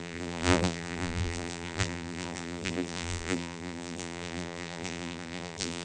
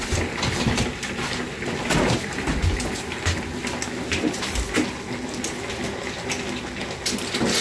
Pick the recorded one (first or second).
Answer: second